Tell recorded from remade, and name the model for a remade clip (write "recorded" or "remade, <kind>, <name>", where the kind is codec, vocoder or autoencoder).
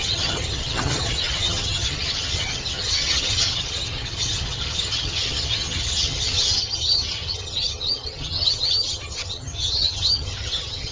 remade, vocoder, HiFi-GAN